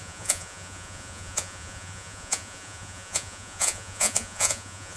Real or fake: fake